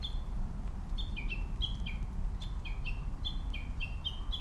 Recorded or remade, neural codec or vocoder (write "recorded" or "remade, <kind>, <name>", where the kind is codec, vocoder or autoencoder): recorded